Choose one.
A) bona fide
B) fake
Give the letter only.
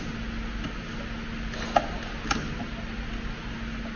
A